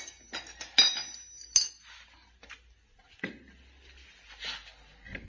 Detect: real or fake real